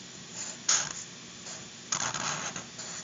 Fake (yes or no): no